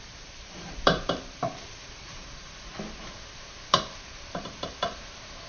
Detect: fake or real fake